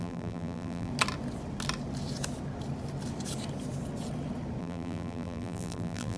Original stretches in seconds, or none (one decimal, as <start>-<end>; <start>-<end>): 0.9-4.6